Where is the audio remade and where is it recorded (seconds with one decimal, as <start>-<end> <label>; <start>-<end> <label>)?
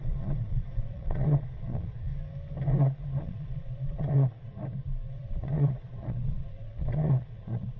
0.0-2.1 remade; 2.1-3.2 recorded; 3.2-4.5 remade; 4.5-5.1 recorded; 5.1-7.8 remade